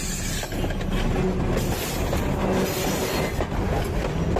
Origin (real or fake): real